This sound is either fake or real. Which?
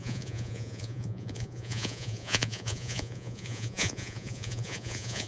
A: fake